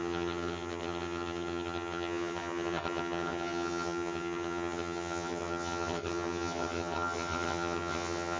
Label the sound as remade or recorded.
remade